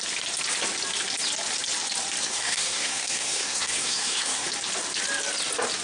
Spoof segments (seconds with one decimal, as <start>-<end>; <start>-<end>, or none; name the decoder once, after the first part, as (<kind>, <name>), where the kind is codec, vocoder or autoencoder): 2.2-4.5 (codec, SNAC)